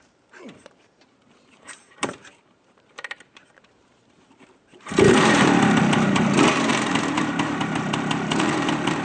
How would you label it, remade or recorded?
remade